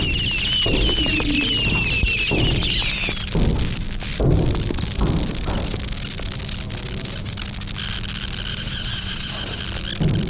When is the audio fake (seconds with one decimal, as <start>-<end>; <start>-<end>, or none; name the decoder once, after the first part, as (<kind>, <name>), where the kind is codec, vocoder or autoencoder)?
8.5-9.6 (vocoder, Vocos)

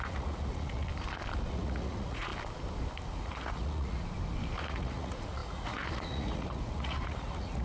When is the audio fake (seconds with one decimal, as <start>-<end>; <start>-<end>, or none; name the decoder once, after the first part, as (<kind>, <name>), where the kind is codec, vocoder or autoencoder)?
0.0-0.9 (vocoder, Vocos); 1.5-2.3; 3.2-4.0; 4.6-7.6